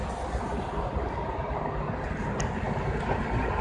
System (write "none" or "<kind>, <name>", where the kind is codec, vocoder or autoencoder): none